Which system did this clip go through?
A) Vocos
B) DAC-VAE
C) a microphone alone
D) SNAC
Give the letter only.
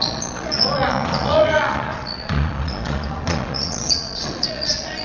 A